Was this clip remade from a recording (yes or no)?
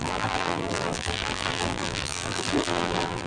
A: yes